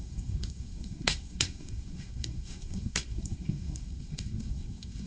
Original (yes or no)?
no